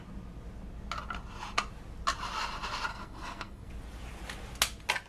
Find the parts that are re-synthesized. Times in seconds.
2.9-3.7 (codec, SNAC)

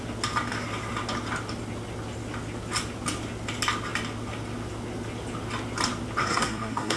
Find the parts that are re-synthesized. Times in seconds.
6.2-7.0 (codec, SNAC)

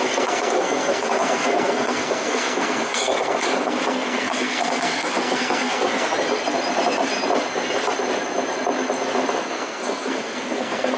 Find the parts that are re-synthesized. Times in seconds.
0.0-6.1 (codec, SNAC); 9.3-11.0

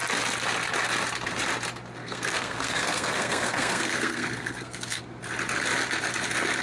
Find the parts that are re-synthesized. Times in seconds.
2.0-5.0 (codec, SNAC)

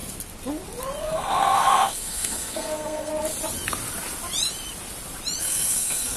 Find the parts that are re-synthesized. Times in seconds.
1.0-3.1 (codec, SNAC); 5.4-6.2